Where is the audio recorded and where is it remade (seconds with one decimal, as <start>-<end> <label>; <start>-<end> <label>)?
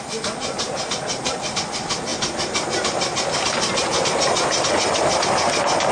0.0-5.9 recorded